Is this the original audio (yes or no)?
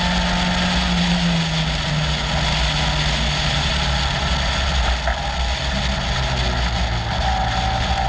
yes